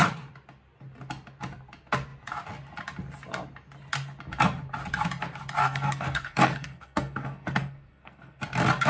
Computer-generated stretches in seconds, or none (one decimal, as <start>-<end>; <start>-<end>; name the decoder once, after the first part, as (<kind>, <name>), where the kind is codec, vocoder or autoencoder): 5.6-8.4 (codec, SNAC)